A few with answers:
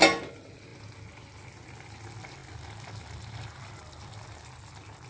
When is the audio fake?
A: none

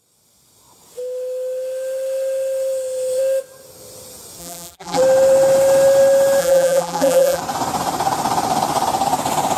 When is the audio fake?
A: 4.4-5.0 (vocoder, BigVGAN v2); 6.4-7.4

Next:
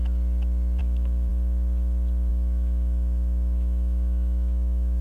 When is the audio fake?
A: 0.8-1.3 (autoencoder, DAC-VAE); 2.3-5.0